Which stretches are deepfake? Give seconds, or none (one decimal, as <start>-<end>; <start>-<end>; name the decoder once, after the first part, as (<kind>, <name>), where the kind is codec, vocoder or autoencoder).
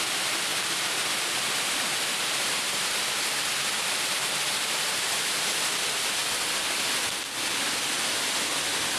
0.5-5.6 (vocoder, BigVGAN v2)